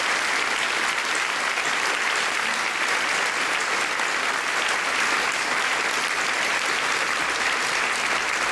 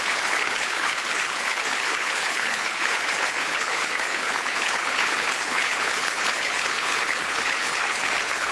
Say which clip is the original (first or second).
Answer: first